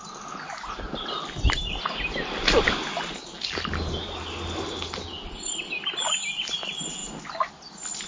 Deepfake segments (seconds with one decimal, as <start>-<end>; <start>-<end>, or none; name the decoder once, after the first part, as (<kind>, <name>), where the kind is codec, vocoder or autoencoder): none